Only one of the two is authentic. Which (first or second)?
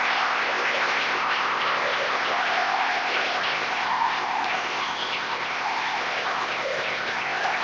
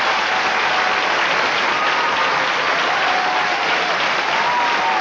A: second